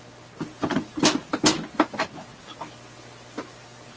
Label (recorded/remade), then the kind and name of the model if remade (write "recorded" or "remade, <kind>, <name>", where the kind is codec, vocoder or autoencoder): recorded